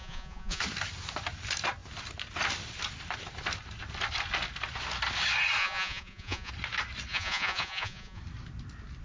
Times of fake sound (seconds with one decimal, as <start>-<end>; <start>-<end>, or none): 0.0-0.6; 5.6-6.5; 7.1-8.2